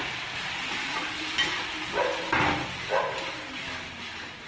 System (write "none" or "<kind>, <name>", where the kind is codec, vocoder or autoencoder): none